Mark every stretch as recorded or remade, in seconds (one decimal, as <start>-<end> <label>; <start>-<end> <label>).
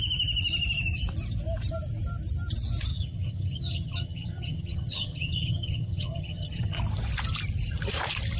0.0-2.9 recorded; 2.9-6.8 remade; 6.8-8.4 recorded